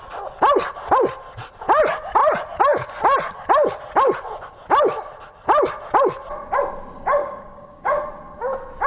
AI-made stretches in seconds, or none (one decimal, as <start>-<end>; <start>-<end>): 7.2-8.0